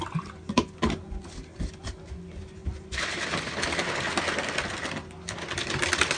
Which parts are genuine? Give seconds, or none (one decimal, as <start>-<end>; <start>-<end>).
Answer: 0.0-6.2